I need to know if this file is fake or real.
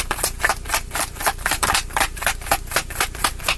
fake